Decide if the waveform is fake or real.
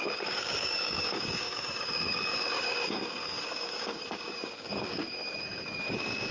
fake